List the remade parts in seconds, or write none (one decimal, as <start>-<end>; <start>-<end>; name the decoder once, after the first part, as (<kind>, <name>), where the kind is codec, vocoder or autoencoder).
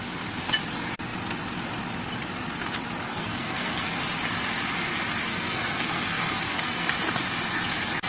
3.1-4.0 (codec, SNAC); 5.3-6.9